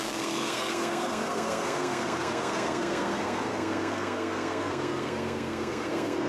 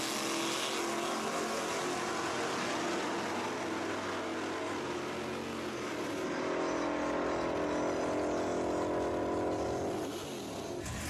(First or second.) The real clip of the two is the second